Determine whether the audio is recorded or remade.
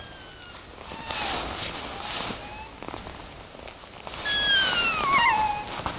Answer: recorded